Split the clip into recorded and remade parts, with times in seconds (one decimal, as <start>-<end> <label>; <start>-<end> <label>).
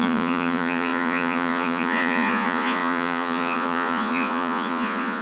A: 0.0-5.2 remade